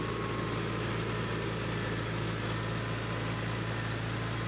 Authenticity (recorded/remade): recorded